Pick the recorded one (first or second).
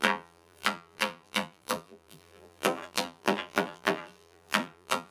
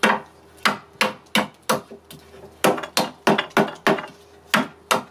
second